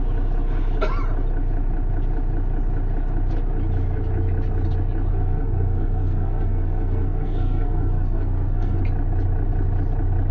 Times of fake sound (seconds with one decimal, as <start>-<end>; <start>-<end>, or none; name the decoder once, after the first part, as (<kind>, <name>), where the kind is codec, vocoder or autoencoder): 5.1-8.8 (codec, SNAC)